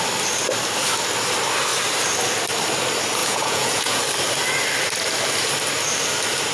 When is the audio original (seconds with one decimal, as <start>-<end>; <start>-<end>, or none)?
0.0-3.2; 4.0-6.5

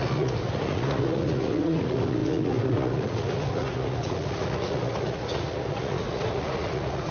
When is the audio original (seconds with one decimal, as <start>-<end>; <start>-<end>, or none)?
none

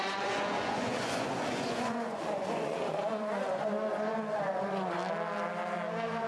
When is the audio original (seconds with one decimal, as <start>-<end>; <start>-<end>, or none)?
5.0-6.3

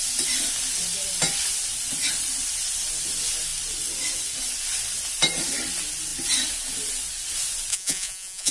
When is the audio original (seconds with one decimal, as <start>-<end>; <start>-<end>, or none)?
0.0-7.7

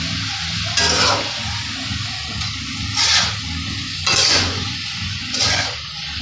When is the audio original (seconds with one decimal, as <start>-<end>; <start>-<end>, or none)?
0.0-3.8; 5.6-6.2

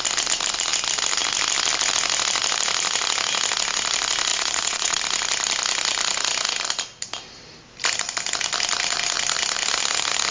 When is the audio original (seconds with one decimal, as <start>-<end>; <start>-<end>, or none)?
0.0-4.3; 5.0-10.3

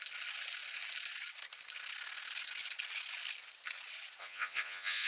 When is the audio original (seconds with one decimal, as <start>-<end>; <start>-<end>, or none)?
0.0-4.2